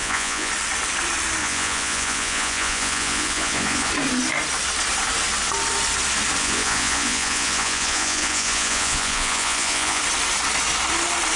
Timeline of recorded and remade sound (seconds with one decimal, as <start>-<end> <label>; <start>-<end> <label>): 0.0-0.5 remade; 0.5-1.4 recorded; 1.4-3.9 remade; 3.9-6.4 recorded; 6.4-10.0 remade; 10.0-11.4 recorded